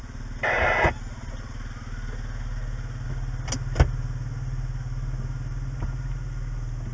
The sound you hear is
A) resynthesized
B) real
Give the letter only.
B